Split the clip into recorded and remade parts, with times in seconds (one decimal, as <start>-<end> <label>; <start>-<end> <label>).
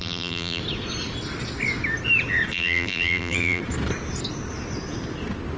0.0-0.6 remade; 0.6-2.5 recorded; 2.5-3.6 remade; 3.6-5.6 recorded